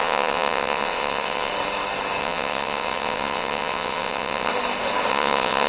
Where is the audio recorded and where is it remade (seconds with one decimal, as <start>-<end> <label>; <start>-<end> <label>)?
0.0-1.5 remade; 1.5-2.2 recorded; 2.2-4.5 remade; 4.5-5.1 recorded; 5.1-5.7 remade